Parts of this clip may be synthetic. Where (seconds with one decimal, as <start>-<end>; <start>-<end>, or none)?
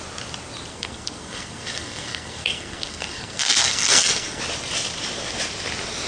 0.7-4.4